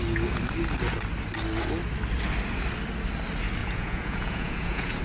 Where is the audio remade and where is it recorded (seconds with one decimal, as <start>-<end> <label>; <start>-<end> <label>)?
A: 0.0-3.6 recorded; 3.6-5.0 remade